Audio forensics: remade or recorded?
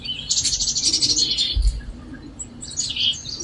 recorded